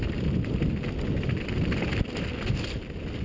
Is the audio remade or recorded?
recorded